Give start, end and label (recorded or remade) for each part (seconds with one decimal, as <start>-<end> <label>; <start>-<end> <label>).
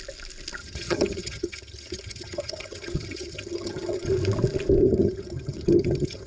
0.0-0.6 recorded; 0.6-4.1 remade; 4.1-4.8 recorded; 4.8-6.3 remade